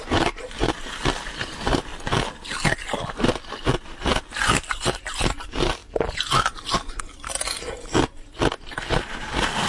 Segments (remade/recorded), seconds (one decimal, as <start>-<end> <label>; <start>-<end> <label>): 0.0-1.9 remade; 1.9-3.1 recorded; 3.1-4.1 remade; 4.1-4.7 recorded; 4.7-5.8 remade; 5.8-9.0 recorded; 9.0-9.7 remade